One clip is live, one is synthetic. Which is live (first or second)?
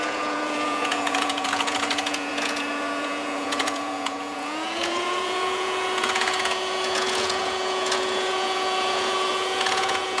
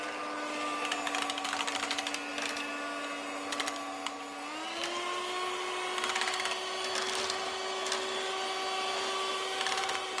second